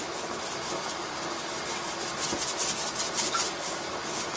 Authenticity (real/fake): real